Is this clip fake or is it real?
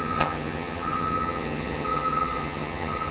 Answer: fake